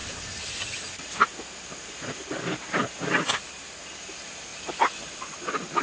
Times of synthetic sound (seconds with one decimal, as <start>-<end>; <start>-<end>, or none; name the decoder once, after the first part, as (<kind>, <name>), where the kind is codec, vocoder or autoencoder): 0.0-4.5 (vocoder, BigVGAN v2)